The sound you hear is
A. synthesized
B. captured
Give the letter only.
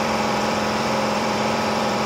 A